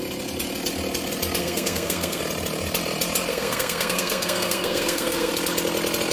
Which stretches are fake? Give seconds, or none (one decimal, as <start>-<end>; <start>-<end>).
1.4-2.2; 3.3-5.3